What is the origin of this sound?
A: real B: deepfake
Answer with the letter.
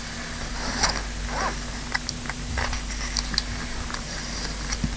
A